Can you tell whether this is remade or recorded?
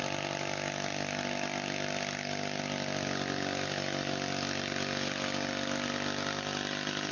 recorded